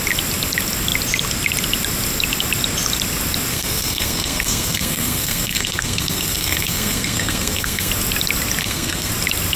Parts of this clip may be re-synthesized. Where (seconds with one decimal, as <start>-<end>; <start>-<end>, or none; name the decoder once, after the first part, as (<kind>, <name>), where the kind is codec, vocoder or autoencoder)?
3.5-7.9 (codec, SNAC); 8.6-9.1